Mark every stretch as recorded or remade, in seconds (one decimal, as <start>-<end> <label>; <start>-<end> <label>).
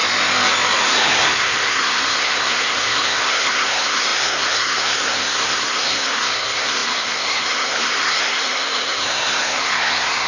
0.0-0.8 recorded; 0.8-10.3 remade